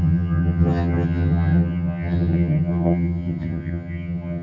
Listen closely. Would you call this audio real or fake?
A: fake